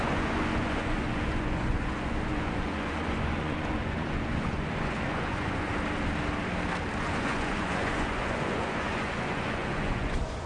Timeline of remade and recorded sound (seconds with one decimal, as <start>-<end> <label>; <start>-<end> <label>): 0.0-5.7 remade; 5.7-7.0 recorded; 7.0-10.5 remade